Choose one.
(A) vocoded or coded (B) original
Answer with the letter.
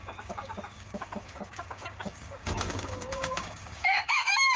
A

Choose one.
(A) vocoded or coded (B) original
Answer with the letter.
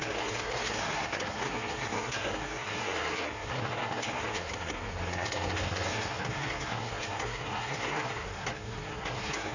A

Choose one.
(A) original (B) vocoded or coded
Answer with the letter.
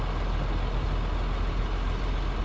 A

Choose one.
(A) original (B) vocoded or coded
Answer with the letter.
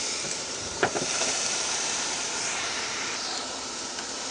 B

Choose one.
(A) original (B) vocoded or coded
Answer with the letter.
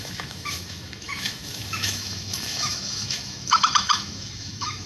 B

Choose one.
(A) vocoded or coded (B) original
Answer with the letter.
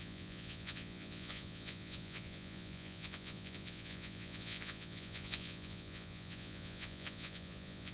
A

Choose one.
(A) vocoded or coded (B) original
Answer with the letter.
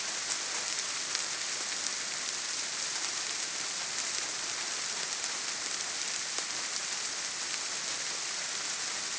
B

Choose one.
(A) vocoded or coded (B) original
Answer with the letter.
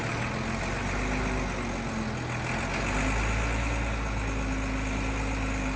B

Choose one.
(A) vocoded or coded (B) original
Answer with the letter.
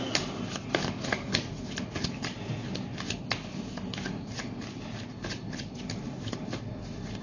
B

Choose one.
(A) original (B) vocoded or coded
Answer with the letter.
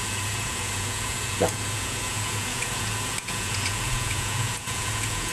B